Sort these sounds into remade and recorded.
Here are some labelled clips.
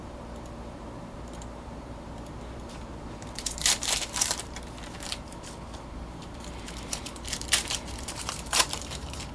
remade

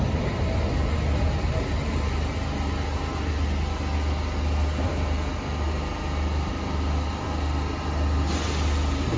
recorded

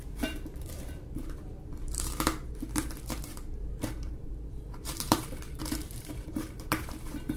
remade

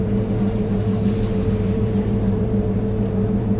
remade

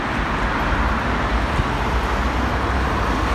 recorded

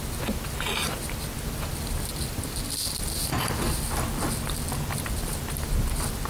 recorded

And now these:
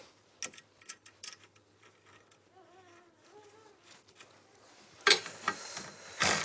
recorded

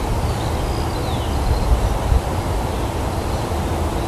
recorded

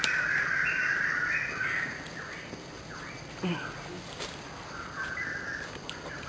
recorded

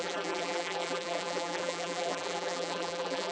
remade